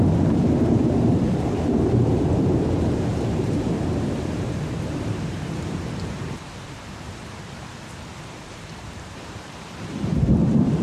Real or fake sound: fake